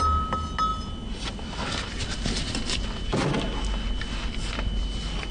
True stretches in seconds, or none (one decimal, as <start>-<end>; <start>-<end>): 0.0-5.3